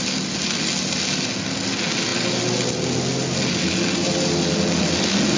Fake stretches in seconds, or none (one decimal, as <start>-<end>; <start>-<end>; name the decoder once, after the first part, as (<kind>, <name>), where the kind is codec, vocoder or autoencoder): none